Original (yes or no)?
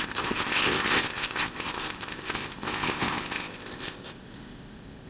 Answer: no